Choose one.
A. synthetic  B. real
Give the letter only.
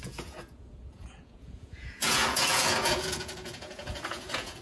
A